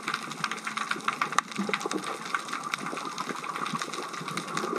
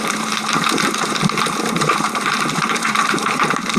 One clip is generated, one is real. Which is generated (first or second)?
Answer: second